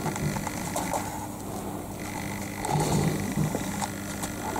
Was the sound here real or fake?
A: real